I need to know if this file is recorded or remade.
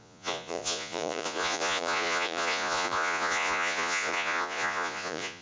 remade